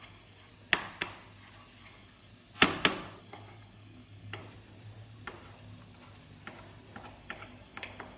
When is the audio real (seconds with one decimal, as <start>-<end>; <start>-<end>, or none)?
0.5-1.8; 2.3-3.2; 4.4-7.2